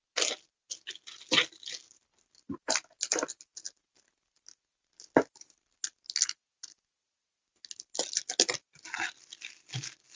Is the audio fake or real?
real